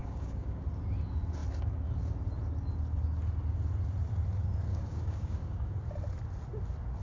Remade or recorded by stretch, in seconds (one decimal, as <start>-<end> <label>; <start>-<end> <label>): 0.0-0.6 remade; 0.6-4.7 recorded; 4.7-5.7 remade; 5.7-7.0 recorded